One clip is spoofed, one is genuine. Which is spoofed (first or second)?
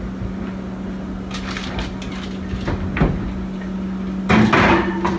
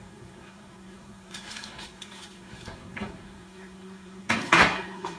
second